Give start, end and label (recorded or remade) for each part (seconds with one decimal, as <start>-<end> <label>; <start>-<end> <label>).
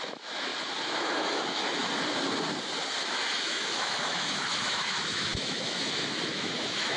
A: 0.0-0.5 remade; 0.5-1.0 recorded; 1.0-1.8 remade; 1.8-3.0 recorded; 3.0-7.0 remade